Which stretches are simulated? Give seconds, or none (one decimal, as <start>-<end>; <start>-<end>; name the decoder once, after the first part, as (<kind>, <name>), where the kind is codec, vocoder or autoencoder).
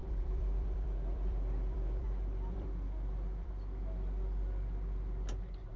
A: 0.0-3.5 (vocoder, BigVGAN v2)